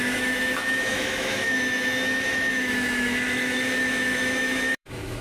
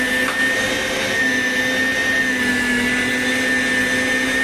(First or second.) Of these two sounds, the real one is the second